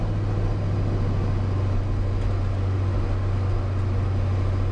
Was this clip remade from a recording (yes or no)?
no